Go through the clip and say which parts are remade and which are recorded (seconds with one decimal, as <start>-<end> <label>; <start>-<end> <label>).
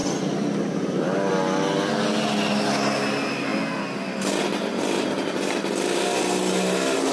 0.0-1.3 remade; 1.3-7.1 recorded